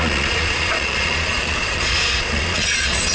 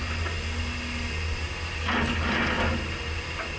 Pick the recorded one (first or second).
second